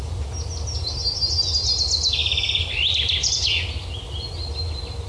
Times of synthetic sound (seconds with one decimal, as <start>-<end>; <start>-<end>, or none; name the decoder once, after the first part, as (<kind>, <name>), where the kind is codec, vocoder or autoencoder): none